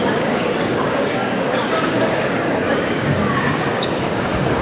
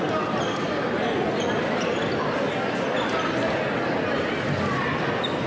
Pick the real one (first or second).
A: second